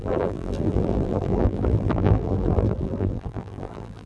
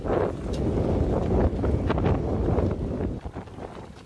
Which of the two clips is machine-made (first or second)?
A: first